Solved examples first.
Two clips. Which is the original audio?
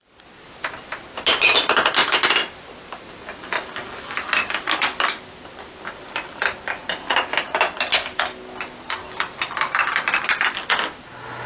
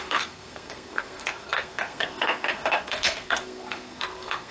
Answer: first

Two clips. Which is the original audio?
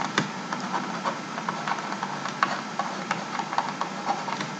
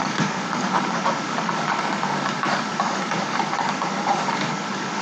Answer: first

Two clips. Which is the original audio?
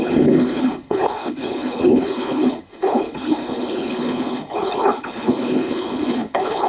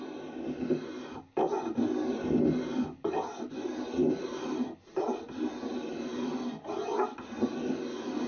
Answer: second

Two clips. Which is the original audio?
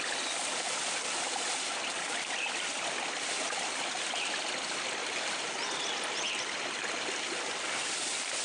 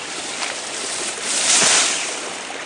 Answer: first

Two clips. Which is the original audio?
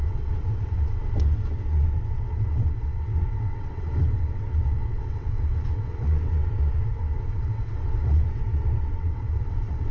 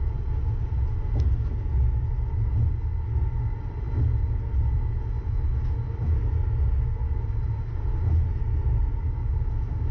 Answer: second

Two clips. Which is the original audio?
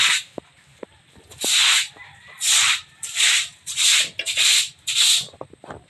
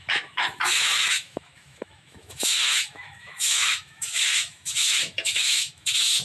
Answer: first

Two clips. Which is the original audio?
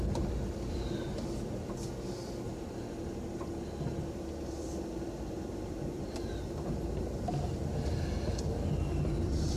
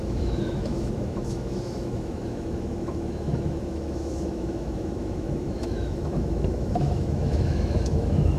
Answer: first